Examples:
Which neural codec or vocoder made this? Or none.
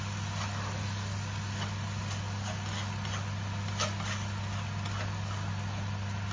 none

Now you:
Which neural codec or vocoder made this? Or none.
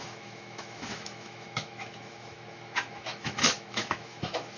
autoencoder, DAC-VAE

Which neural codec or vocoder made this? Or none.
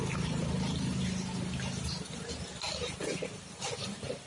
none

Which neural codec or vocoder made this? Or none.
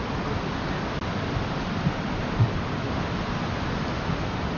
none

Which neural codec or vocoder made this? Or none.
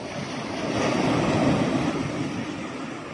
none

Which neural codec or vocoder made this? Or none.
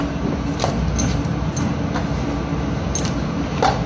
none